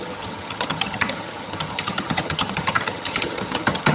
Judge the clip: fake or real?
fake